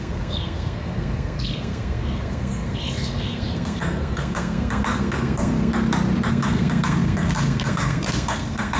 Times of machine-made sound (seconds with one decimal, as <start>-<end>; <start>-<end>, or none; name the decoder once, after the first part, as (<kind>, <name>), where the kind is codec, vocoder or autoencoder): 0.0-5.7 (codec, SNAC); 6.3-8.8